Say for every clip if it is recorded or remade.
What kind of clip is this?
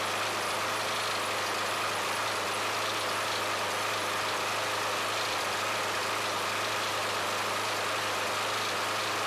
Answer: recorded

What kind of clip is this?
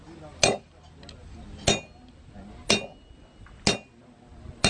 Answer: recorded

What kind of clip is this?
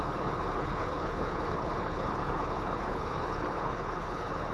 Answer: remade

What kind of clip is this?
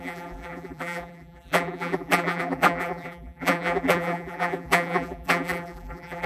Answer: remade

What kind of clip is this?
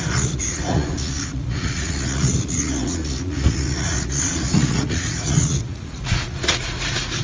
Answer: remade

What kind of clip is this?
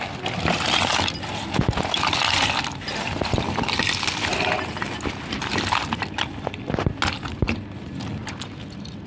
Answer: recorded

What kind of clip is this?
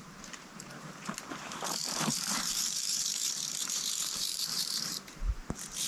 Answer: remade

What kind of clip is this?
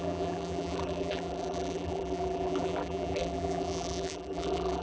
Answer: remade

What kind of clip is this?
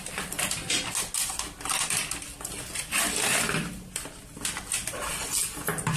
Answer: recorded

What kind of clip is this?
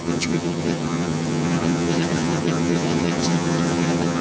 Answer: remade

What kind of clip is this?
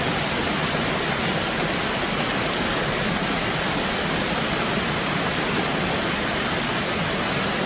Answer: recorded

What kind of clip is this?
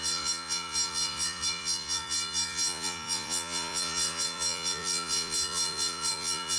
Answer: remade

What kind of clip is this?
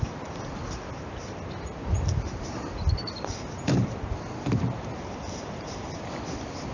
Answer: recorded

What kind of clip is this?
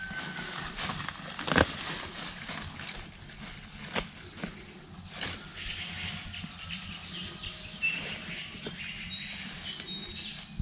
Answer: recorded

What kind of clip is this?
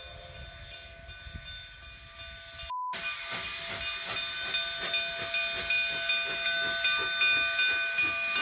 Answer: recorded